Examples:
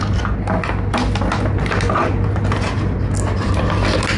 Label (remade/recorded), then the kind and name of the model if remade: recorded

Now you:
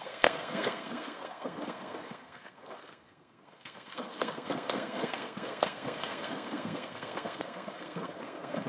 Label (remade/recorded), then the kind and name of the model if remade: remade, codec, SNAC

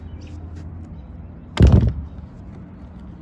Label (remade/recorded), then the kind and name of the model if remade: recorded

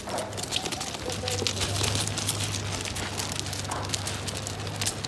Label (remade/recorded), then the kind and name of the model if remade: recorded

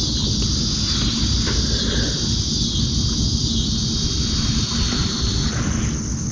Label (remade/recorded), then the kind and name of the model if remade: recorded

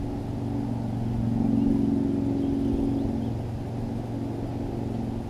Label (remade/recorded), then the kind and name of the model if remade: recorded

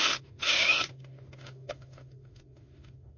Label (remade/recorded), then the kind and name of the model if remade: remade, autoencoder, DAC-VAE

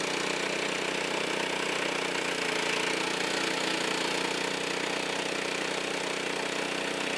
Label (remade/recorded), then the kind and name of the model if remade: recorded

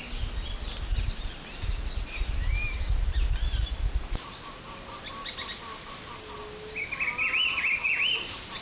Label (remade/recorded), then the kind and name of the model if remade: recorded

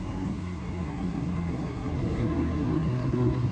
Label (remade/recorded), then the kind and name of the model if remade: remade, codec, SNAC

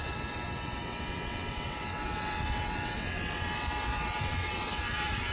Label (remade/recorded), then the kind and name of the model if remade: remade, vocoder, WaveNeXt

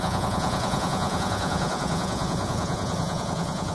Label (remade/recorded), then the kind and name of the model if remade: remade, vocoder, Vocos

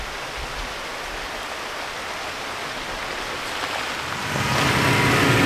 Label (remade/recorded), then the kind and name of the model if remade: recorded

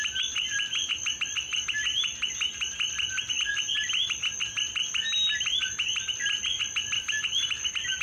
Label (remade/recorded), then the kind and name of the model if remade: recorded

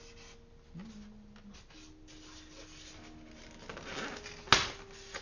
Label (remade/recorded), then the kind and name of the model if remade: recorded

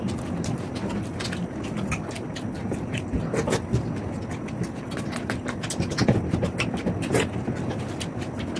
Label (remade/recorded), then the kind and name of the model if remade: recorded